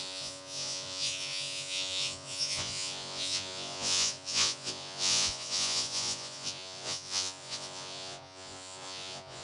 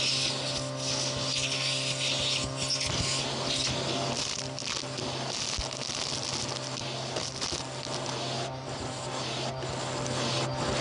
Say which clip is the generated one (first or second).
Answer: first